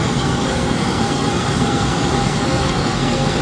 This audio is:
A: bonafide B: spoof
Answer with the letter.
B